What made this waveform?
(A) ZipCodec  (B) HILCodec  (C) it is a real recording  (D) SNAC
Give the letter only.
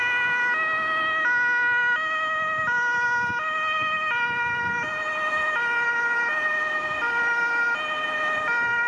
C